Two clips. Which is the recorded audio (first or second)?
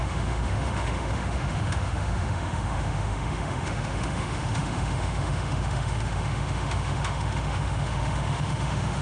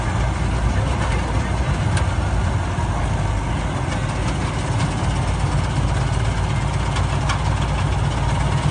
second